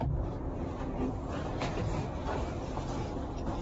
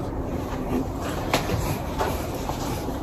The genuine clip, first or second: first